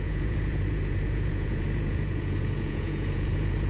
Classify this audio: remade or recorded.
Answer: remade